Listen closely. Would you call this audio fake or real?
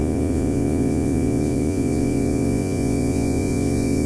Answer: fake